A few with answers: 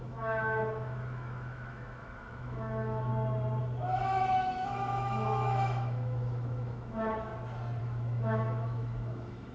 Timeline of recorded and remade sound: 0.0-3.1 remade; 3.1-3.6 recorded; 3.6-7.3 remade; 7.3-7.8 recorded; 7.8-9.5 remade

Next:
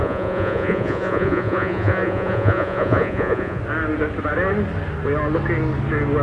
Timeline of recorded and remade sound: 0.0-3.6 remade; 3.6-6.2 recorded